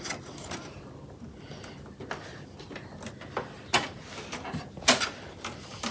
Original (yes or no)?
yes